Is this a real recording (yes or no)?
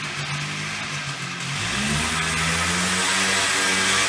yes